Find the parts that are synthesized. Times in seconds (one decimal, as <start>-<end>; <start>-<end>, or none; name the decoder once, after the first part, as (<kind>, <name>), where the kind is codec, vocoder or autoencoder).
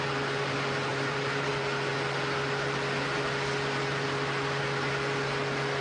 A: 0.9-1.5 (vocoder, BigVGAN v2)